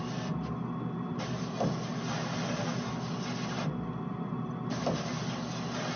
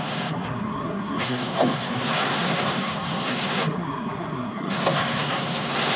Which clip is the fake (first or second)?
second